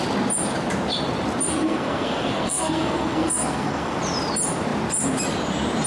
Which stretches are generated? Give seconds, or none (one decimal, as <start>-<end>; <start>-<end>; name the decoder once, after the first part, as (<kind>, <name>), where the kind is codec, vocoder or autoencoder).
1.5-4.0 (codec, SNAC)